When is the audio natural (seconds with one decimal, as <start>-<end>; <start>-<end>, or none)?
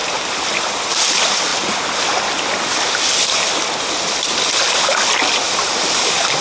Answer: 0.0-0.9; 1.5-5.3